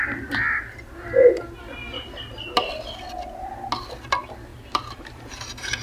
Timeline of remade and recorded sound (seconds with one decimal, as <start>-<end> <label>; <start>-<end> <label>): 0.0-4.5 recorded; 4.5-5.3 remade; 5.3-5.8 recorded